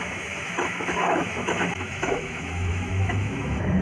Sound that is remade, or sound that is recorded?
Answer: remade